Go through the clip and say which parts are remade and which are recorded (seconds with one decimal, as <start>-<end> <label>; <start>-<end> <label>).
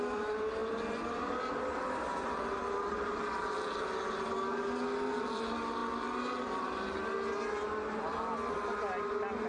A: 0.0-9.5 recorded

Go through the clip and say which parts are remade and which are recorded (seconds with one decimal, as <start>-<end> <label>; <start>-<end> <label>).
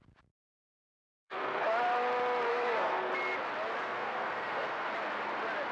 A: 0.0-0.8 recorded; 0.8-1.6 remade; 1.6-2.5 recorded; 2.5-3.1 remade; 3.1-3.8 recorded; 3.8-4.9 remade; 4.9-5.7 recorded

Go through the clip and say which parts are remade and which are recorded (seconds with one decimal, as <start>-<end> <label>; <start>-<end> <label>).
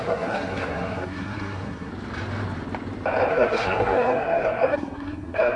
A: 0.0-1.9 remade; 1.9-3.3 recorded; 3.3-5.6 remade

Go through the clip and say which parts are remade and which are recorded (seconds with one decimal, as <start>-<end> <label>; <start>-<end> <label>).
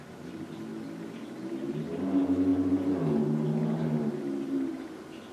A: 0.0-5.3 recorded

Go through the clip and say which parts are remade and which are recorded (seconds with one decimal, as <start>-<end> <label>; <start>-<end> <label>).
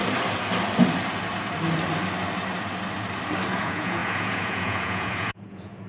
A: 0.0-3.5 recorded; 3.5-5.9 remade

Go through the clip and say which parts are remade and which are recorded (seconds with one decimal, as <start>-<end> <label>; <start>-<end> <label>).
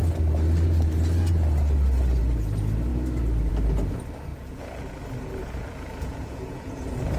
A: 0.0-4.3 recorded; 4.3-5.0 remade; 5.0-5.4 recorded; 5.4-7.2 remade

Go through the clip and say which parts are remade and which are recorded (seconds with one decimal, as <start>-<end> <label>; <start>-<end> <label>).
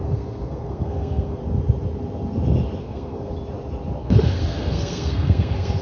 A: 0.0-1.4 remade; 1.4-2.8 recorded; 2.8-3.3 remade; 3.3-4.0 recorded; 4.0-5.8 remade